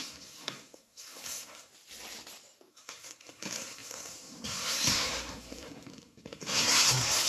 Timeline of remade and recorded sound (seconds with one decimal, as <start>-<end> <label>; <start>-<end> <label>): 0.0-1.7 remade; 1.7-2.7 recorded; 2.7-7.3 remade